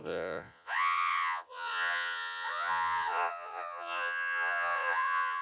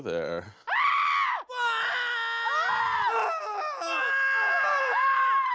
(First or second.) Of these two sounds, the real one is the second